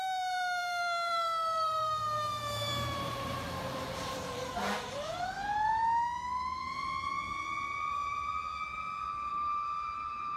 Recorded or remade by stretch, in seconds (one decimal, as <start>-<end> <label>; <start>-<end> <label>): 0.0-5.8 remade; 5.8-7.9 recorded; 7.9-8.3 remade; 8.3-9.3 recorded; 9.3-10.4 remade